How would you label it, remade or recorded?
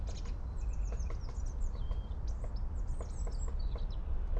recorded